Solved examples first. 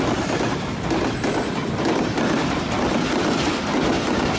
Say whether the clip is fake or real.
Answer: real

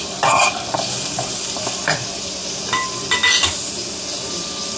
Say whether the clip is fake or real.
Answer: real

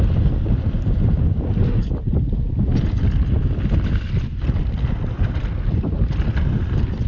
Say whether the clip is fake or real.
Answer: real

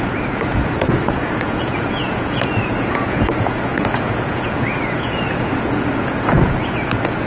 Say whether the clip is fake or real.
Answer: fake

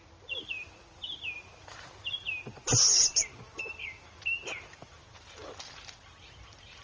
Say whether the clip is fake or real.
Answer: real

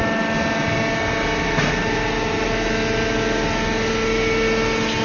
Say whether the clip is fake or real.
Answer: real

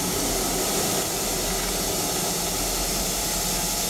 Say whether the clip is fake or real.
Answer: real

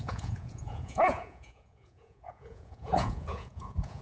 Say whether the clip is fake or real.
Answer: fake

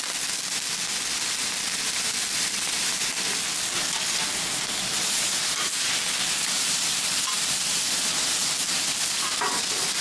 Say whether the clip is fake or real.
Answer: real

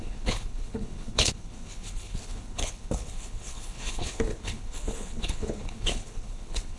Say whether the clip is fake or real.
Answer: fake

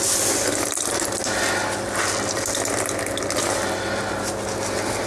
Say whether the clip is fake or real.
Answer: real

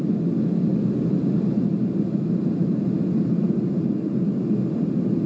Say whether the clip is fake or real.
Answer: real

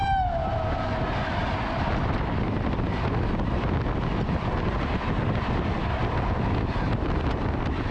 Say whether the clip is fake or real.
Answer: real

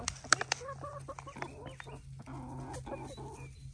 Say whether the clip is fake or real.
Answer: real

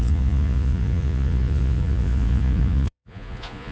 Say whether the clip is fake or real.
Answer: fake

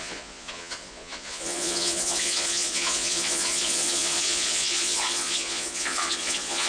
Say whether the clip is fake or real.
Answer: fake